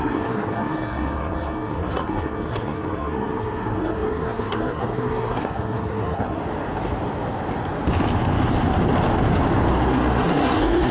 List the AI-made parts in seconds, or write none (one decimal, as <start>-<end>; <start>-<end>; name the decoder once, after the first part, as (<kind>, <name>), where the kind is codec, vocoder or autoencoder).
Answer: 0.0-6.4 (codec, SNAC); 9.9-10.9